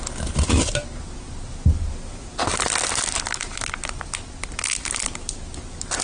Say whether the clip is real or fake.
real